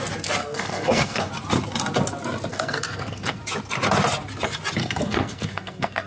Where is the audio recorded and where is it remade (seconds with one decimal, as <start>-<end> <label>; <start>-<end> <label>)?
0.0-0.4 recorded; 0.4-1.3 remade; 1.3-2.5 recorded; 2.5-3.4 remade; 3.4-4.8 recorded; 4.8-6.1 remade